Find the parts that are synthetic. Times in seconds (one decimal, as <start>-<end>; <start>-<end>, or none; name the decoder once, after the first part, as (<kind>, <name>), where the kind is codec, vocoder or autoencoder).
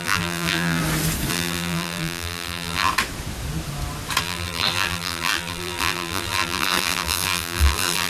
0.0-0.8 (vocoder, BigVGAN v2); 1.3-2.9; 4.2-8.1